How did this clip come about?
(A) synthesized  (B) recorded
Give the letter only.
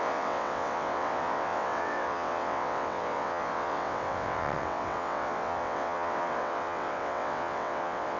A